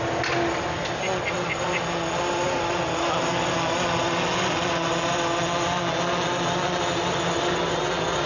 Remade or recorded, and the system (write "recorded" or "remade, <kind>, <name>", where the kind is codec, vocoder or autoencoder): recorded